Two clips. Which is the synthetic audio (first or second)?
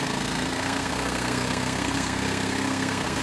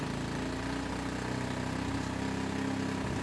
first